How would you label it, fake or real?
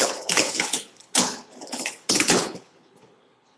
fake